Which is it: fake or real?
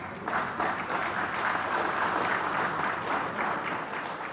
real